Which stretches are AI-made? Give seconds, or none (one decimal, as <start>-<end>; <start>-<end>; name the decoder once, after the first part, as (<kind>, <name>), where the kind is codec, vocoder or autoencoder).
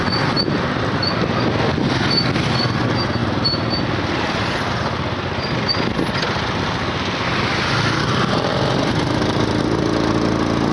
8.5-9.6 (vocoder, BigVGAN v2)